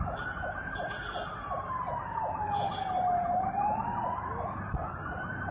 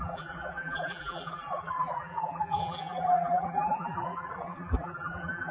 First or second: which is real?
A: first